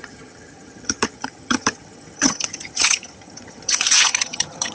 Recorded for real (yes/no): no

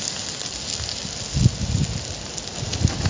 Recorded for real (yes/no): yes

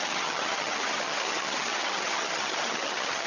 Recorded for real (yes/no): no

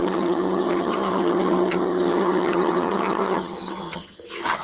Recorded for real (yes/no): no